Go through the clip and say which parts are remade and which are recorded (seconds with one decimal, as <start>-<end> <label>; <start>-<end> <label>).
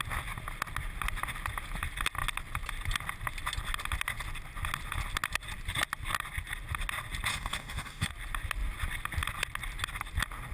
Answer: 0.0-7.3 recorded; 7.3-8.1 remade; 8.1-10.5 recorded